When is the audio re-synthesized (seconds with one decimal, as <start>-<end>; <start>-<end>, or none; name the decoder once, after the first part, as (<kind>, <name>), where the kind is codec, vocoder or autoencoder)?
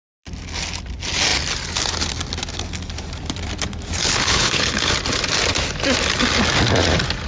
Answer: 4.0-4.9 (codec, HILCodec)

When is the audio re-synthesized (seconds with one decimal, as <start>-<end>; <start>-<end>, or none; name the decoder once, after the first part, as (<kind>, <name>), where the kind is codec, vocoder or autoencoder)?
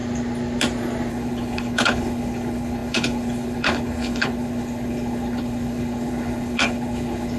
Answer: 1.1-7.4 (codec, HILCodec)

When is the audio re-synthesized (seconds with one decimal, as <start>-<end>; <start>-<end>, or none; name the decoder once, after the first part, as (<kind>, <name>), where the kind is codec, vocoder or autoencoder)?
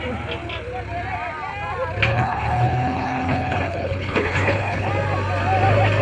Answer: 2.1-4.9 (codec, HILCodec)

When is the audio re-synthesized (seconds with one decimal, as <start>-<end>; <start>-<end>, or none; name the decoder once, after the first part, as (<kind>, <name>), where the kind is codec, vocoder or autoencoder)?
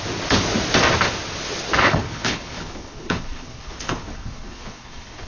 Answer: 1.8-5.3 (codec, HILCodec)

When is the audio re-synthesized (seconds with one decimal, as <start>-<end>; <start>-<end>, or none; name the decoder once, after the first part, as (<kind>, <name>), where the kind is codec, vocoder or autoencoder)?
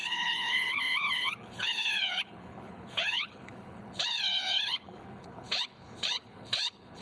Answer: 0.0-7.0 (codec, HILCodec)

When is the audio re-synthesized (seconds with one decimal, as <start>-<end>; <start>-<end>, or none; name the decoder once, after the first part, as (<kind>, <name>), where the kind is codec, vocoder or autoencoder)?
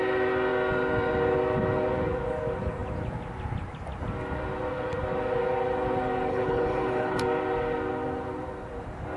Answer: 6.3-7.2 (codec, HILCodec)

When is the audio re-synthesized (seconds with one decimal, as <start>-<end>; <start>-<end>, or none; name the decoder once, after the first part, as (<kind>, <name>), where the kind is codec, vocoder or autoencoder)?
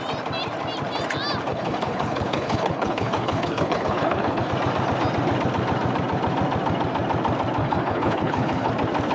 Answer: 1.5-4.5 (codec, HILCodec); 7.6-8.7